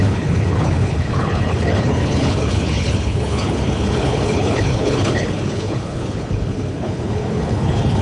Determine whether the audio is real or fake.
fake